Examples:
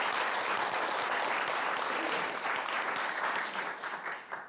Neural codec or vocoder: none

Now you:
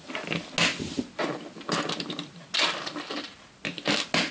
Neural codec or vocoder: none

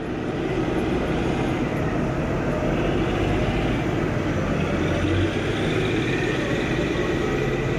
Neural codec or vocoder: none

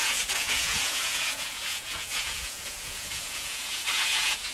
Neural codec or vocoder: vocoder, Vocos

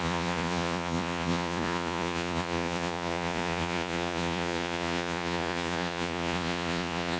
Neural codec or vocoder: vocoder, Vocos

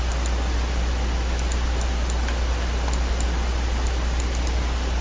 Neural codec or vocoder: none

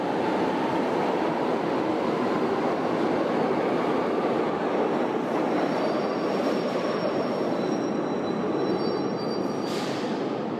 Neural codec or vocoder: none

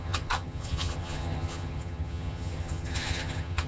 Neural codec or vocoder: vocoder, HiFi-GAN